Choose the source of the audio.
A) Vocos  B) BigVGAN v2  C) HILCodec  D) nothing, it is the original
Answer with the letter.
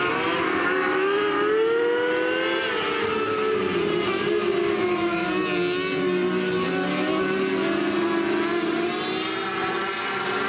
D